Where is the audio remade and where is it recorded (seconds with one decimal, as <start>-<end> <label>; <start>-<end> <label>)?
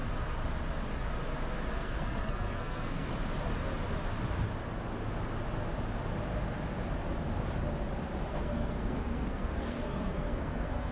0.0-1.7 recorded; 1.7-3.1 remade; 3.1-8.2 recorded; 8.2-10.9 remade